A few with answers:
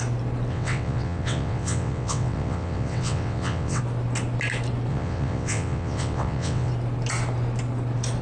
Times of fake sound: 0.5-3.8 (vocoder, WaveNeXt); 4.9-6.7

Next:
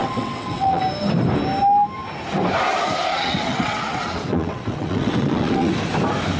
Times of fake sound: 0.0-0.8 (vocoder, WaveNeXt); 3.1-5.7

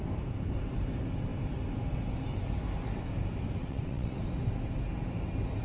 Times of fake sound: 3.6-4.1 (vocoder, WaveNeXt)

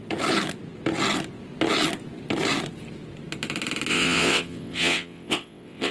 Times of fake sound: 3.9-5.9 (vocoder, WaveNeXt)

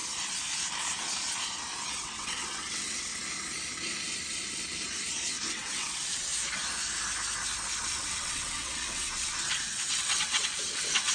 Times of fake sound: 1.9-3.1 (vocoder, WaveNeXt); 5.5-6.3; 7.8-11.1